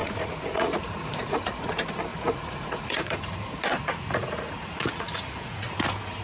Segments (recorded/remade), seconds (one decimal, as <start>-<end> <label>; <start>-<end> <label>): 0.0-1.7 remade; 1.7-2.1 recorded; 2.1-5.8 remade; 5.8-6.2 recorded